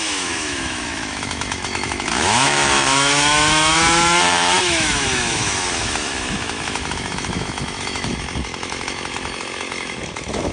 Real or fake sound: fake